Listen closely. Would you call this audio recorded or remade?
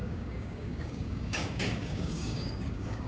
remade